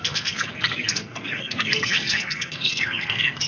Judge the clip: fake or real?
fake